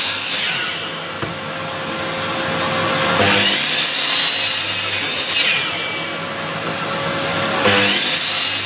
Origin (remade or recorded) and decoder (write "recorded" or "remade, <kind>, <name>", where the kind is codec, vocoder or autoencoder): recorded